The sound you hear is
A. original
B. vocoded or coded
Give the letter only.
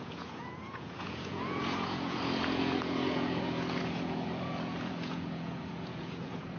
B